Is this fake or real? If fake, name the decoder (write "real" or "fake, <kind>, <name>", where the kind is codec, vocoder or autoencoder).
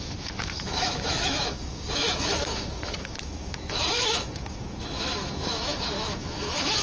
fake, autoencoder, DAC-VAE